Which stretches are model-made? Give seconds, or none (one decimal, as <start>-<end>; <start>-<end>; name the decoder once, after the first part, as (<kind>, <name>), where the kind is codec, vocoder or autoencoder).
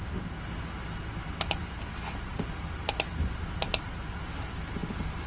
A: none